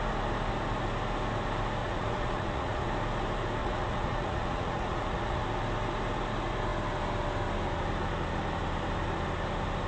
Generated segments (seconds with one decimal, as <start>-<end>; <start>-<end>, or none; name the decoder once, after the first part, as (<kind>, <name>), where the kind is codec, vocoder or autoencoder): 1.8-2.9 (vocoder, Vocos); 3.6-5.4